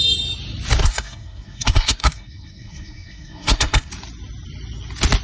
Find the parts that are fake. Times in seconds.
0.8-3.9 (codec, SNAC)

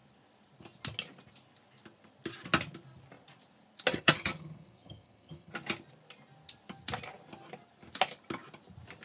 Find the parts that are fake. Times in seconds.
3.9-5.5 (vocoder, HiFi-GAN)